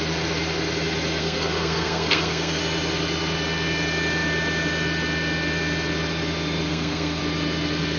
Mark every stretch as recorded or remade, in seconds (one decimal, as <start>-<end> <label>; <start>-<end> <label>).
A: 0.0-1.2 recorded; 1.2-2.6 remade; 2.6-6.7 recorded; 6.7-7.2 remade; 7.2-8.0 recorded